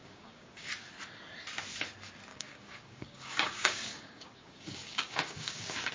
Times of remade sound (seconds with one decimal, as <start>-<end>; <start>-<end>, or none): 0.0-0.7; 2.3-5.9